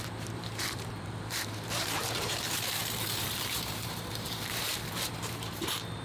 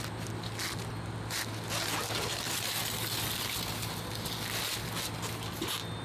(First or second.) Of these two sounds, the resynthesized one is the first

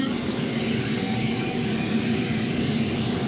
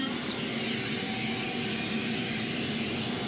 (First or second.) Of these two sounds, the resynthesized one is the first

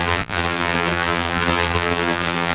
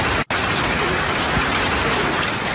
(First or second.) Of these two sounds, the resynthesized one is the first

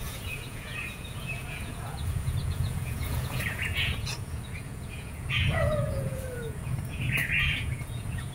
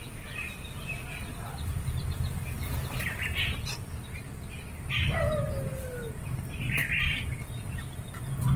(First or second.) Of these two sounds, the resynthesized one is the first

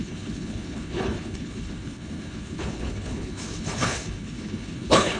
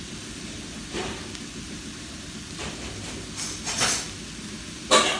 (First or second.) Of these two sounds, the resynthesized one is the first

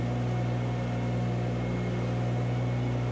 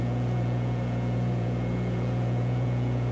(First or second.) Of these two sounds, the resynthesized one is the second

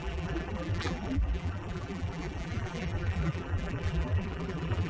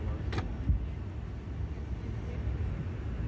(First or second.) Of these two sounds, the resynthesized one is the first